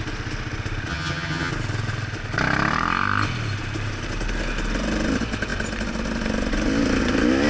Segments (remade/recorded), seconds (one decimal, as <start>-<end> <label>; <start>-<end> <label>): 0.0-0.9 recorded; 0.9-1.5 remade; 1.5-7.5 recorded